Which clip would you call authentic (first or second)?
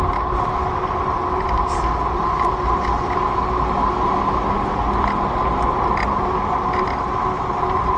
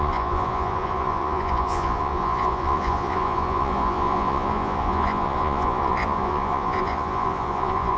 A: first